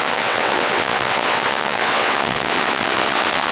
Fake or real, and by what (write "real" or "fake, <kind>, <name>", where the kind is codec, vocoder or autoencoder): fake, vocoder, WaveNeXt